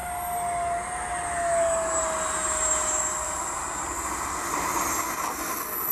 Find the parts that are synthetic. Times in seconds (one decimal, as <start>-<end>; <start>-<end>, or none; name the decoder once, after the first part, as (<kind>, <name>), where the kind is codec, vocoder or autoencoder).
none